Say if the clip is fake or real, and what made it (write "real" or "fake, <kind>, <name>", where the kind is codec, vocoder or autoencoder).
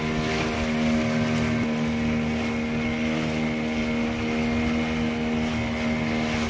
real